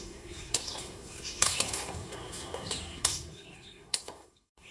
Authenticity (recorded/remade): remade